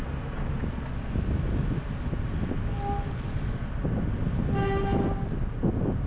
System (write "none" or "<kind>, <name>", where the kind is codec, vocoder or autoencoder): none